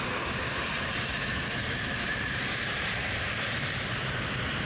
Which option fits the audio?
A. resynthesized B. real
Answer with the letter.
A